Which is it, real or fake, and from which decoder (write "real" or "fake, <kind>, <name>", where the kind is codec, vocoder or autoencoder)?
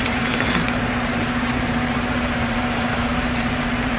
fake, vocoder, BigVGAN v2